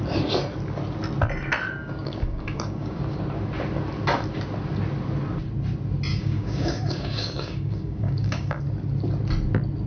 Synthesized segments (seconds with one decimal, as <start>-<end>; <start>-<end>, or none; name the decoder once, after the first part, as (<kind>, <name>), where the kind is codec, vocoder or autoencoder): 1.8-3.0 (codec, DAC); 6.1-8.6

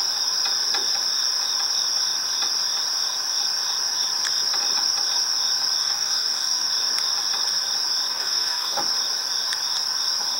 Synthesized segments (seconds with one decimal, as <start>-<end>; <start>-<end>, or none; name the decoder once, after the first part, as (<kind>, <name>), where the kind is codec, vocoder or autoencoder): 5.8-6.7 (codec, DAC); 8.1-8.8